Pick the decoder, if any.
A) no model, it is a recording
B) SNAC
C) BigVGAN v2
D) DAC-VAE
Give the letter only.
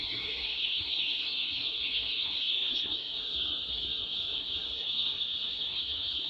B